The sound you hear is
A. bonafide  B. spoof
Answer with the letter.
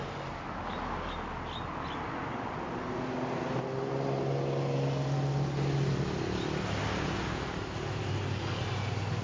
A